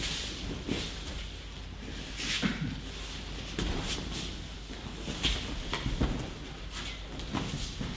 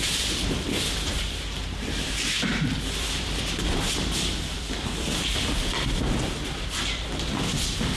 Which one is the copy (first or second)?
second